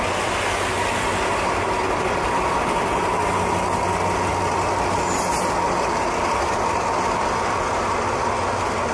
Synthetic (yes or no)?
no